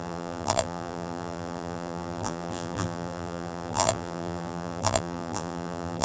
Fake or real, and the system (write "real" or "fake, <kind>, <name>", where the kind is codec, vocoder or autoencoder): fake, vocoder, BigVGAN v2